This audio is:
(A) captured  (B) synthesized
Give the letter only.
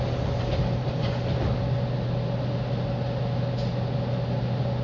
A